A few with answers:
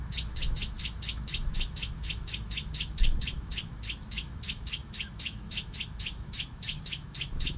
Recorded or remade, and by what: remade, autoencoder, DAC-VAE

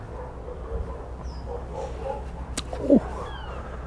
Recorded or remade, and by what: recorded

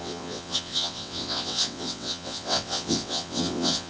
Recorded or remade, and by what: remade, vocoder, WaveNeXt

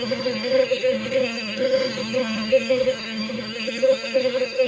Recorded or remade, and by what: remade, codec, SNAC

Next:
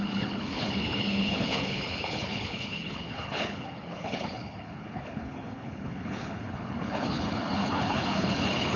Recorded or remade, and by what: remade, codec, HILCodec